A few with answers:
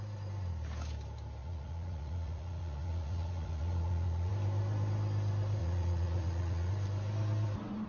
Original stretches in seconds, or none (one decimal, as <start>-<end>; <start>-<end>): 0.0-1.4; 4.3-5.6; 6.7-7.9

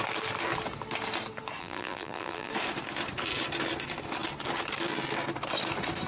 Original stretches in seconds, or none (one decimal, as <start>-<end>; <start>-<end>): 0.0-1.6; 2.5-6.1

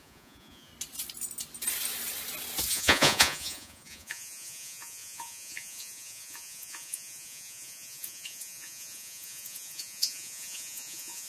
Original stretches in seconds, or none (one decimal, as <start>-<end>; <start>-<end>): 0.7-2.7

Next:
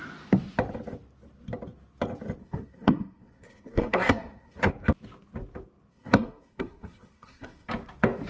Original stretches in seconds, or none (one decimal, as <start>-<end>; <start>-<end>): 0.0-2.4; 4.7-5.9; 7.7-8.3

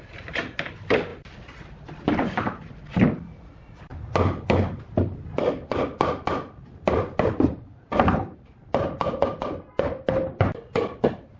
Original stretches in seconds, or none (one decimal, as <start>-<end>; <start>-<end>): 0.0-11.4

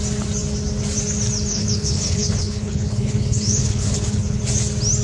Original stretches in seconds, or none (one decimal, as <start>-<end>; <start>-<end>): 0.0-1.5; 4.4-5.0

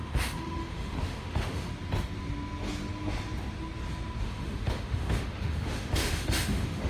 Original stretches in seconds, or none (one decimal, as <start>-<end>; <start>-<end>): 1.7-4.2

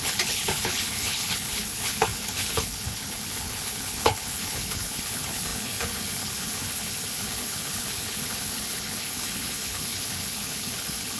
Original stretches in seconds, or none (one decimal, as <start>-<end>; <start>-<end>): none